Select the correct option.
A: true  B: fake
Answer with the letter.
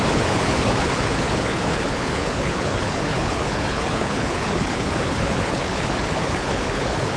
B